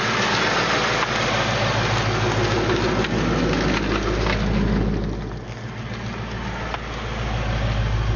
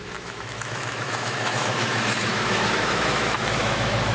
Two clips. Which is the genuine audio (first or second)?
first